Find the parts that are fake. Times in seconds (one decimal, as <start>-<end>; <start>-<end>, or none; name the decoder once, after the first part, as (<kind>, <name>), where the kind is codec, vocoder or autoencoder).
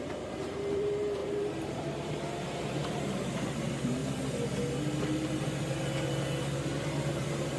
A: 0.0-4.0 (vocoder, BigVGAN v2); 7.1-7.6